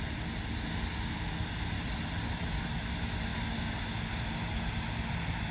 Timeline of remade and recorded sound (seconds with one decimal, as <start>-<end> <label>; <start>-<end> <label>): 0.0-5.5 recorded